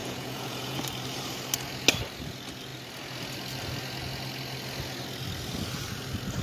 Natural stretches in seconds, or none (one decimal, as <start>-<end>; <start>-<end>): 0.8-6.4